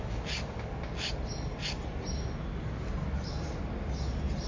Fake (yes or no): no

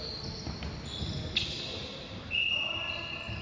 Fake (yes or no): no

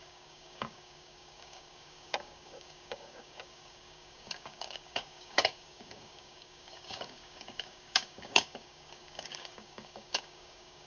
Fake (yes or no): yes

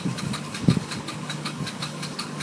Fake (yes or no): yes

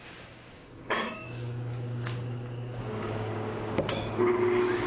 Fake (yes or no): yes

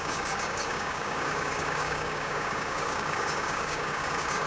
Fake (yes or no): yes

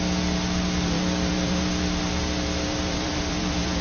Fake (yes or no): no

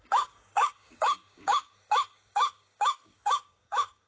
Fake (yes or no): yes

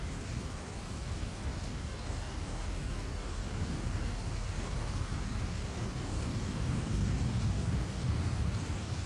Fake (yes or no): yes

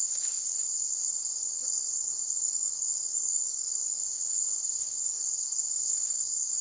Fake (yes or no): yes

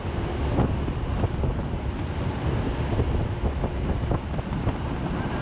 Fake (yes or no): no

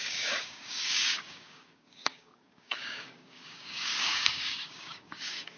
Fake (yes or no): yes